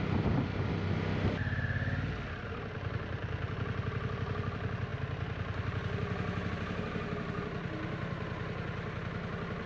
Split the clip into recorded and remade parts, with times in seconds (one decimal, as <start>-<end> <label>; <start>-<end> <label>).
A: 0.0-9.7 recorded